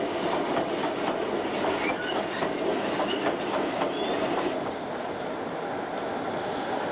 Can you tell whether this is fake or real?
real